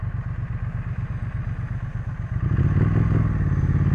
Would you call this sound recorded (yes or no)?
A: yes